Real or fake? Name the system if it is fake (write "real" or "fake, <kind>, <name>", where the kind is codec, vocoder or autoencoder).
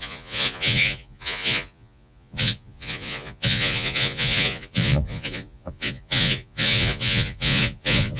fake, vocoder, Vocos